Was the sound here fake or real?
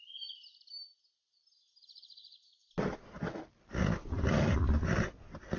real